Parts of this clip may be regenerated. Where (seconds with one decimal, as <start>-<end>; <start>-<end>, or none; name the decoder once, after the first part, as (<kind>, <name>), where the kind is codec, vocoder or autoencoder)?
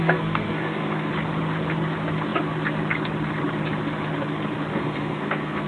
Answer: 0.0-1.1 (codec, SNAC); 4.7-5.7